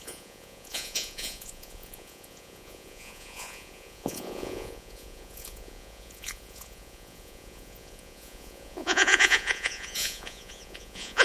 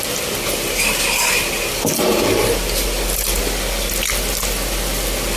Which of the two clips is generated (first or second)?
first